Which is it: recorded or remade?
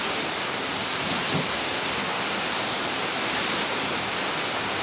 recorded